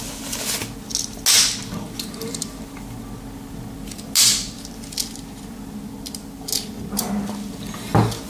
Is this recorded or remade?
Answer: recorded